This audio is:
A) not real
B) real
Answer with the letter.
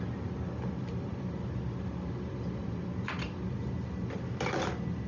B